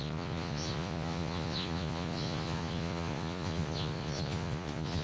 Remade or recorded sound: remade